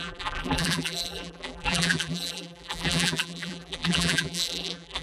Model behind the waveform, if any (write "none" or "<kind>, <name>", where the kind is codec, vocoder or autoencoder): vocoder, BigVGAN v2